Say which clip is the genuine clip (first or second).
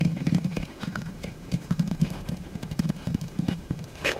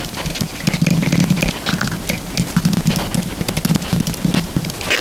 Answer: second